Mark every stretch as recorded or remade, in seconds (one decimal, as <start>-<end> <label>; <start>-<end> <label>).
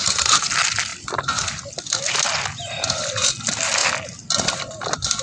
0.0-5.2 recorded